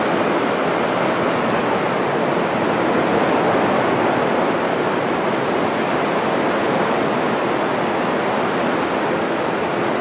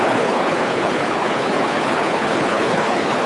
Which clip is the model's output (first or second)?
second